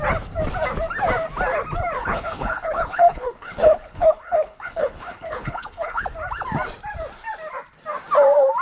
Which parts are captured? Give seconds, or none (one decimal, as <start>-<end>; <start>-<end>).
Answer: 0.0-2.0; 6.0-8.6